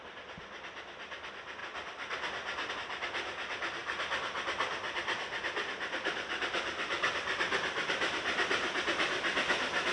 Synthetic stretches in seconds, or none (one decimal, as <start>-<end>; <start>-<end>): 1.6-2.7